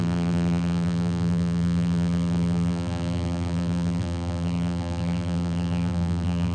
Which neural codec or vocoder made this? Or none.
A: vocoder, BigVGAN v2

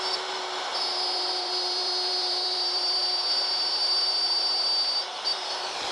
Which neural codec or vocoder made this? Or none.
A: vocoder, BigVGAN v2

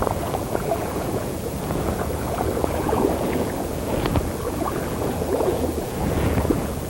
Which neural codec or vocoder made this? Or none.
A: vocoder, Vocos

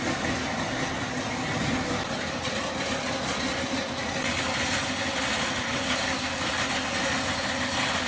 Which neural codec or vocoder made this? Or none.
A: none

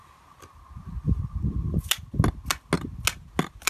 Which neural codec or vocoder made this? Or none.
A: none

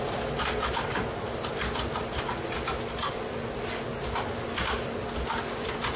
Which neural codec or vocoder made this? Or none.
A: none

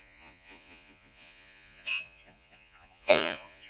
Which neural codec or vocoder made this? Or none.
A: vocoder, Vocos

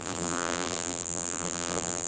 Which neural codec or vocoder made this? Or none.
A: vocoder, BigVGAN v2